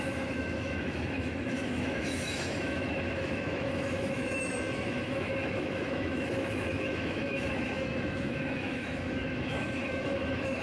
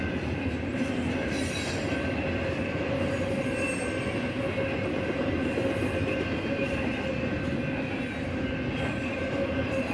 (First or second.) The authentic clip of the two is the second